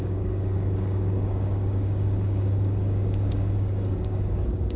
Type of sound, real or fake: fake